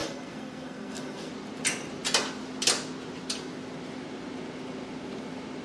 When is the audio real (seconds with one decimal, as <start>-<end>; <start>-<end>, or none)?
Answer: 1.3-5.6